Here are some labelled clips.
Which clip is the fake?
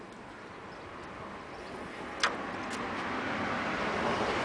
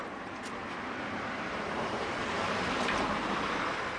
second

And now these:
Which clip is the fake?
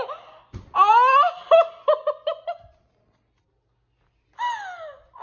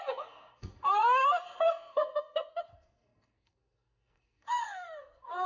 second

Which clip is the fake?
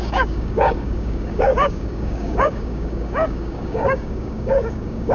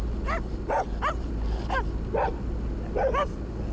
first